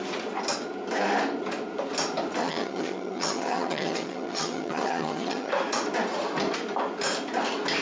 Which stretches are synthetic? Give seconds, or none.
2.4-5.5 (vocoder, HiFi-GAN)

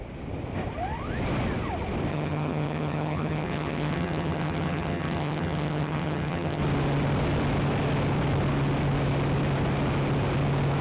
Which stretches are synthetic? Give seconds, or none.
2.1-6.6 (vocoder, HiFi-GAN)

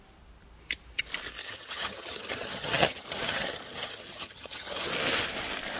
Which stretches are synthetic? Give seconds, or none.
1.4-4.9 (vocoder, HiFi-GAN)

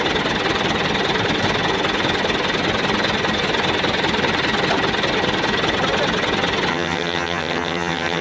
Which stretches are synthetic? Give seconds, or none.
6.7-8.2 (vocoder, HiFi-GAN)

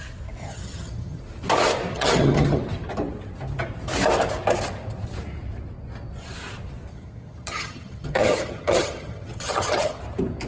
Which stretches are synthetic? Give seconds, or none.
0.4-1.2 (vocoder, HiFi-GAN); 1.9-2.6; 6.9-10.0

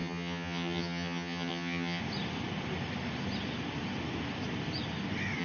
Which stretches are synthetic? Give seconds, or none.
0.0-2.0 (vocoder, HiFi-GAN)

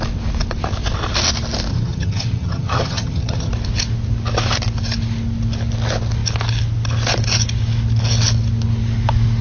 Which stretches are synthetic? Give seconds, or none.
1.7-3.5 (vocoder, HiFi-GAN)

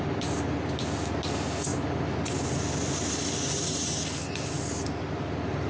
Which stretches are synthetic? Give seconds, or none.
none